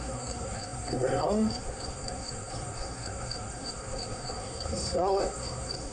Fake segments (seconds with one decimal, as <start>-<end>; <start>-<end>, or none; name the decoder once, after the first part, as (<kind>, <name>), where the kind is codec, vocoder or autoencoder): 0.0-5.9 (codec, SNAC)